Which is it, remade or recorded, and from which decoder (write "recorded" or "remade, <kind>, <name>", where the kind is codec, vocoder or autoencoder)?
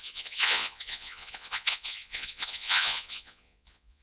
remade, vocoder, Vocos